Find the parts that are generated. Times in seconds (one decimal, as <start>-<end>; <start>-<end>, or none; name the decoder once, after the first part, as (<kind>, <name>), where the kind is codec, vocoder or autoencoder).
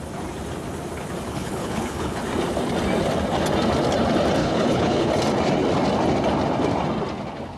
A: 1.3-2.2 (codec, HILCodec); 4.4-5.1